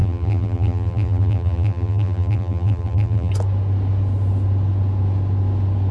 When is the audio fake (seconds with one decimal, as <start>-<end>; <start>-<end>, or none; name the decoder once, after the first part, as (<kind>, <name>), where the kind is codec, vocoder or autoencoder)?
0.0-3.3 (vocoder, BigVGAN v2)